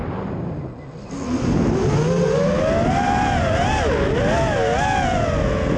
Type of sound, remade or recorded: recorded